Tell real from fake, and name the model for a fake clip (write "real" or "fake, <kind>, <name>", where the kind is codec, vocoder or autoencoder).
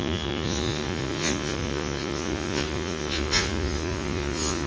fake, vocoder, Vocos